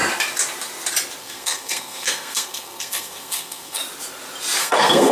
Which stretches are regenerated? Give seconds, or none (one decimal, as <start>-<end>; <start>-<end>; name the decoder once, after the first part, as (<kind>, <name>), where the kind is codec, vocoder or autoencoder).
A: 1.2-3.8 (codec, SNAC); 4.6-5.1